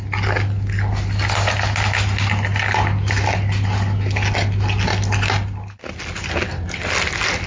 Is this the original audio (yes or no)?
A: yes